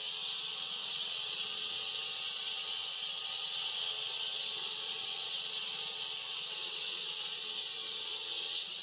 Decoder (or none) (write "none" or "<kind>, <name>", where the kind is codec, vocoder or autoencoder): vocoder, WaveNeXt